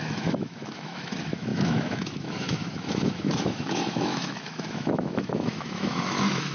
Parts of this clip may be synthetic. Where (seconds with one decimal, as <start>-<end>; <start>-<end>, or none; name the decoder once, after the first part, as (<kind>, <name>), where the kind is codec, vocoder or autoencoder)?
0.0-6.5 (autoencoder, DAC-VAE)